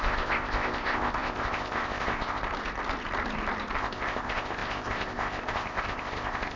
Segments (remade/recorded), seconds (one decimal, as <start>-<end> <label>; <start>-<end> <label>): 0.0-2.4 remade; 2.4-3.8 recorded; 3.8-6.6 remade